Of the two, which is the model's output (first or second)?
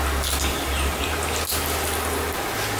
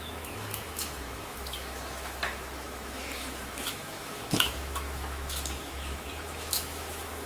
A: second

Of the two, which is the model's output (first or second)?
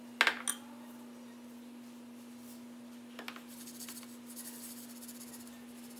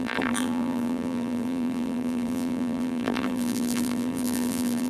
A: second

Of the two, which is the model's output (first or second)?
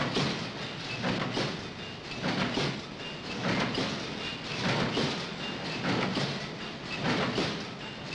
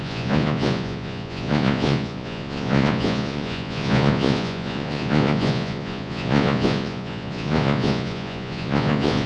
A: second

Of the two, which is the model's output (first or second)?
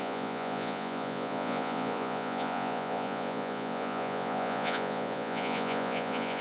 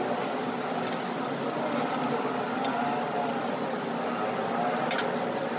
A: first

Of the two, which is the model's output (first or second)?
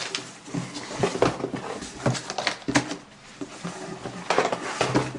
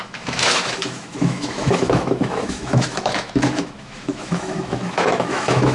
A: second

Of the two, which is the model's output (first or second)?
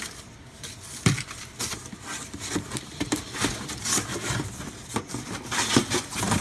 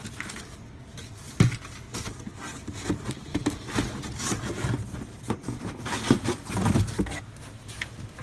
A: first